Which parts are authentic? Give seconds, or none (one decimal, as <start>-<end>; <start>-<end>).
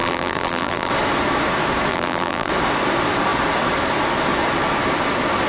0.9-1.9; 2.5-5.5